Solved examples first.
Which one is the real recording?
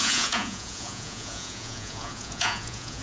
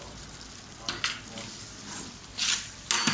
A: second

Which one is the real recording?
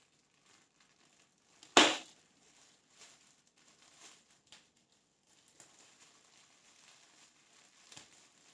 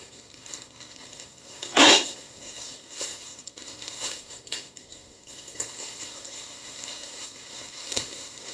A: first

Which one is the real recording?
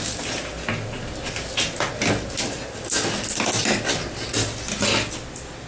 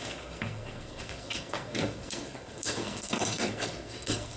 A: first